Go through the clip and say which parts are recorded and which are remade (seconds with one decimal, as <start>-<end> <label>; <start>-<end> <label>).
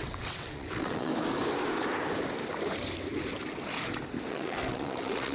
0.0-1.1 remade; 1.1-4.3 recorded; 4.3-5.3 remade